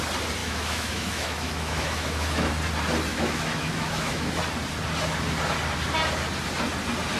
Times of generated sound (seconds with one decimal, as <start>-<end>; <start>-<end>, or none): 0.4-2.5; 3.1-4.4